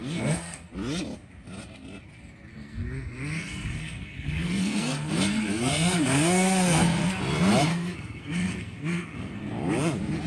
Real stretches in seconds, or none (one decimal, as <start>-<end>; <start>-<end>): 0.7-2.5; 7.2-7.7; 9.5-10.3